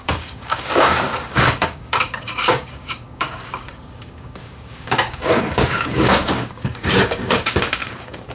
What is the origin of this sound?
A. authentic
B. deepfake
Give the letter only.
B